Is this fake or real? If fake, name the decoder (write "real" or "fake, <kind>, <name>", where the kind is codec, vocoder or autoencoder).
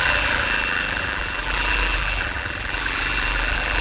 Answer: fake, vocoder, BigVGAN v2